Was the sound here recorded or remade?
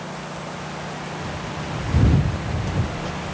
recorded